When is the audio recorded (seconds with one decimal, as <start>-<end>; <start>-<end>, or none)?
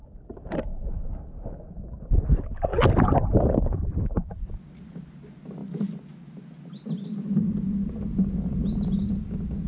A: 0.0-0.7; 1.3-9.7